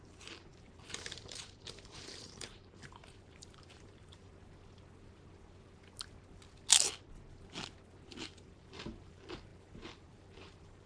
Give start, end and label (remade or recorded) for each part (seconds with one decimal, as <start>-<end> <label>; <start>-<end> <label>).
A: 0.0-4.3 remade; 4.3-8.1 recorded; 8.1-10.9 remade